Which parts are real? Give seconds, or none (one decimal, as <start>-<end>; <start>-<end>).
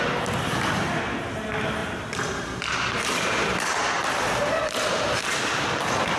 0.0-1.8; 5.5-6.2